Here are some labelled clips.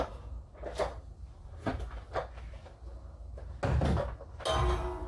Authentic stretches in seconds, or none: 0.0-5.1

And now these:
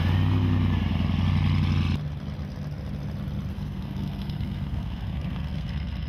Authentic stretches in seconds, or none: 0.0-3.5